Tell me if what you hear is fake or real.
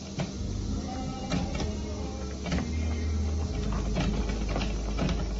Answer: real